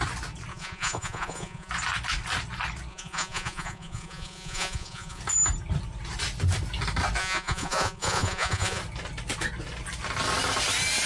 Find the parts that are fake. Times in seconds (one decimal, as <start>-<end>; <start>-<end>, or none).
0.5-1.7; 2.9-5.2; 7.2-8.8